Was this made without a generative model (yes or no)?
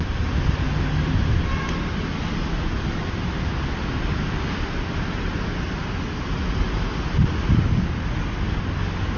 yes